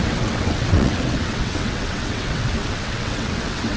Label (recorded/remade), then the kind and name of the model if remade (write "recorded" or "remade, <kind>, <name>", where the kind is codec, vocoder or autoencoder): remade, vocoder, WaveNeXt